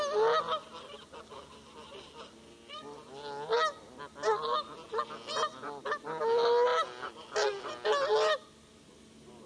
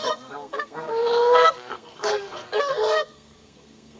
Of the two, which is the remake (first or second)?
second